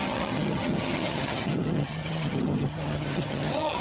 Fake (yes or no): yes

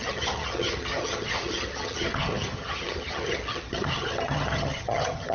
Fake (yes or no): yes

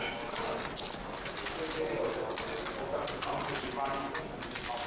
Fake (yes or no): no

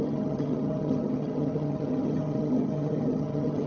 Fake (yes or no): yes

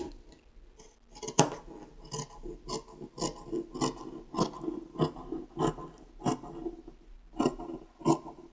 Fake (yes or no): no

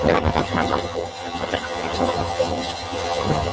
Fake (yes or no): yes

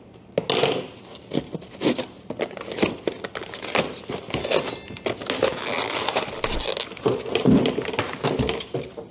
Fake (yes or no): no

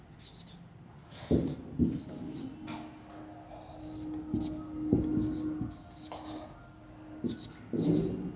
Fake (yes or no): no